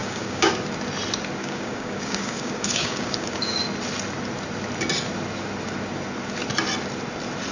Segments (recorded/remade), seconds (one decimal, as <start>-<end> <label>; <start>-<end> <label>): 0.0-0.5 remade; 0.5-1.4 recorded; 1.4-3.6 remade; 3.6-7.5 recorded